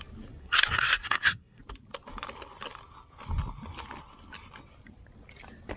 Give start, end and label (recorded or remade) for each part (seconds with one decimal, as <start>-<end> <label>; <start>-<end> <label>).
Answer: 0.0-0.4 recorded; 0.4-1.6 remade; 1.6-5.8 recorded